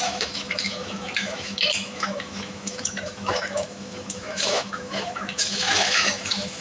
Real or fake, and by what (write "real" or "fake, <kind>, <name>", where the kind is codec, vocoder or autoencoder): fake, autoencoder, DAC-VAE